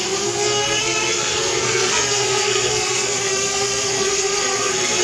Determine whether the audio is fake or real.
fake